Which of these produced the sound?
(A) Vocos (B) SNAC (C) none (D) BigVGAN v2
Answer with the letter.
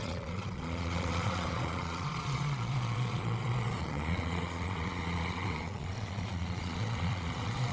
A